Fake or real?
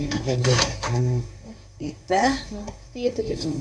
fake